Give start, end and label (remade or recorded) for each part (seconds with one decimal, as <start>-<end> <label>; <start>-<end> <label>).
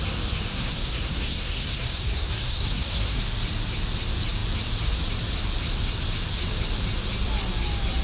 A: 0.0-0.5 recorded; 0.5-3.2 remade; 3.2-8.0 recorded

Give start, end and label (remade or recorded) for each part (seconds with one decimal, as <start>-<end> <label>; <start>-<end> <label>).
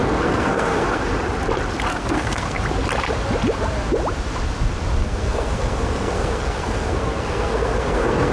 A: 0.0-1.1 remade; 1.1-1.9 recorded; 1.9-2.6 remade; 2.6-5.0 recorded; 5.0-8.3 remade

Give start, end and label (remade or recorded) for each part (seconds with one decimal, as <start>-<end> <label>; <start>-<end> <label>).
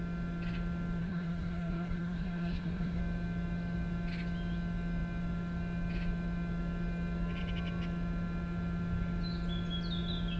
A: 0.0-1.0 recorded; 1.0-3.0 remade; 3.0-10.4 recorded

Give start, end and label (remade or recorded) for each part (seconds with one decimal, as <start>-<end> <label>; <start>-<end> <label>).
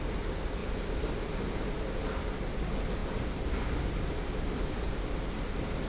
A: 0.0-5.9 recorded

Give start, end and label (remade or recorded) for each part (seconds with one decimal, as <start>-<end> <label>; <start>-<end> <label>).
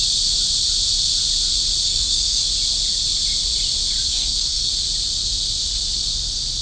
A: 0.0-1.9 recorded; 1.9-2.5 remade; 2.5-4.1 recorded; 4.1-4.7 remade; 4.7-6.6 recorded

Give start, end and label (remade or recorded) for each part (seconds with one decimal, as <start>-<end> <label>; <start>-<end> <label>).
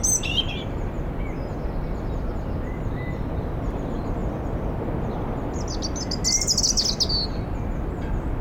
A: 0.0-8.4 recorded